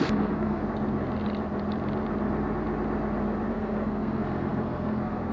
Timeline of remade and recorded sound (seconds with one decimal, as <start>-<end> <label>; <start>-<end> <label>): 0.0-0.6 remade; 0.6-3.5 recorded; 3.5-5.3 remade